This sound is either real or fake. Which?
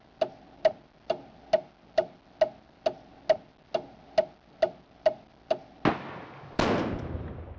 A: real